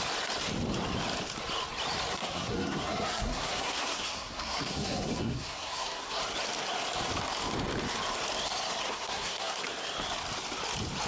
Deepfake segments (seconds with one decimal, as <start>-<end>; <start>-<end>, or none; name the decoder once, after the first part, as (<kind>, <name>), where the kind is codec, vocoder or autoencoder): 2.1-6.2 (codec, SNAC); 8.9-9.6